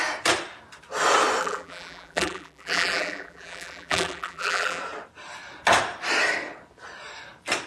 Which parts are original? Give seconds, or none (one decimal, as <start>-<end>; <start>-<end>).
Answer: 0.0-1.4; 4.8-7.7